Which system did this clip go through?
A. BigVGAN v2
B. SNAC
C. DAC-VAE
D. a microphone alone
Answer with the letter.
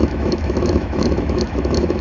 C